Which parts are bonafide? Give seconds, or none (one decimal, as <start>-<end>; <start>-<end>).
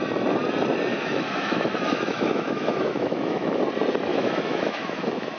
0.0-0.9; 3.6-4.1